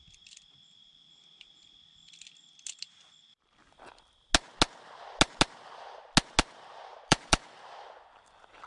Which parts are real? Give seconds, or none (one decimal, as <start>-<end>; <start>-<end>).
0.0-6.9